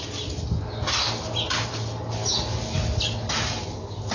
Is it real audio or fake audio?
real